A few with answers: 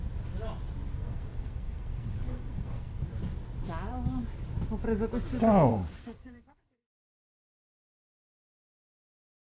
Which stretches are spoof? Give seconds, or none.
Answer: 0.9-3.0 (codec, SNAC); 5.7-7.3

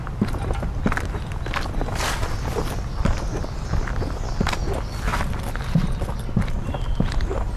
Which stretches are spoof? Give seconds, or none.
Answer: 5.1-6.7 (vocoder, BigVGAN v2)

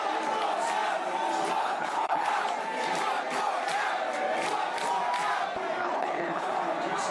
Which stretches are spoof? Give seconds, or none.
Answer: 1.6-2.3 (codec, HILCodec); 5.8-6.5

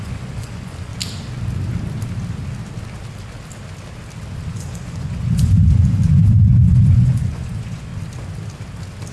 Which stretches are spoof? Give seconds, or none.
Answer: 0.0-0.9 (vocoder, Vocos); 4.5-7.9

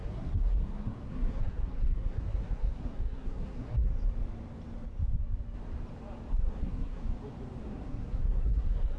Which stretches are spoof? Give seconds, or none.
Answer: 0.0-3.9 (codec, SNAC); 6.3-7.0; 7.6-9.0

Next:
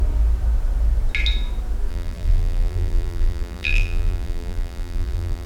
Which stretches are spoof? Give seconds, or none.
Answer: 1.9-5.5 (vocoder, BigVGAN v2)